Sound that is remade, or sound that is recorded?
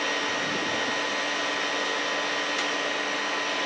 recorded